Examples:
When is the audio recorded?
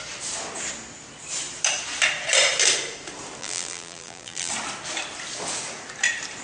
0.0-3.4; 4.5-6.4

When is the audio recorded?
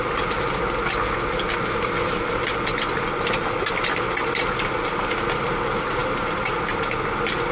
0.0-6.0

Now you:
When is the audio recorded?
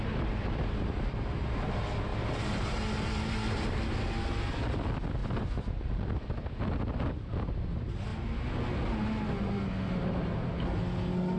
0.0-2.1; 2.8-5.2; 6.1-11.4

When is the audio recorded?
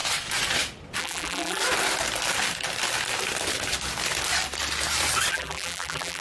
0.0-1.0; 1.6-5.3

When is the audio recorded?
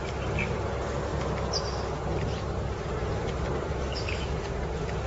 0.0-5.1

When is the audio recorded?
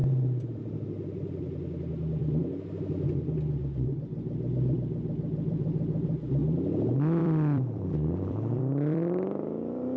2.2-5.5; 6.4-7.2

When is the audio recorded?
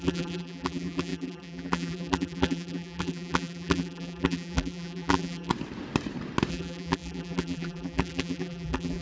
5.5-6.5